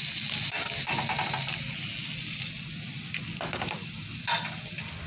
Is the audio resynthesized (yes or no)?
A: no